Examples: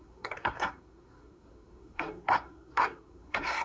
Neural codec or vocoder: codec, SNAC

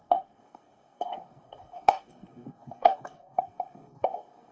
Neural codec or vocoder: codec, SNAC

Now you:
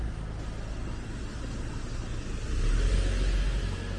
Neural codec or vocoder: none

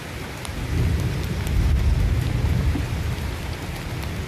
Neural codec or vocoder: none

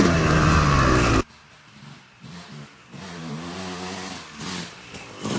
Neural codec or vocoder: none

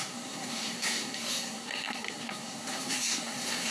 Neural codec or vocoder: codec, SNAC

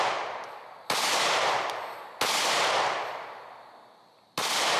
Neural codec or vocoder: none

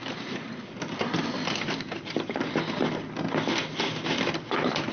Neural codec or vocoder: none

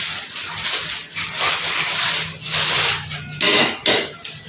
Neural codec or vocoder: none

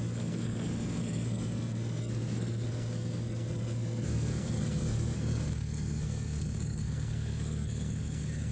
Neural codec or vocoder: codec, SNAC